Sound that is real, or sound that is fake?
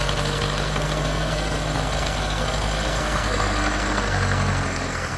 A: fake